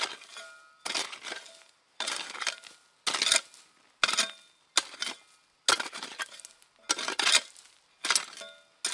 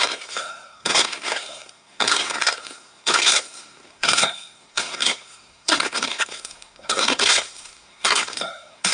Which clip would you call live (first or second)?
first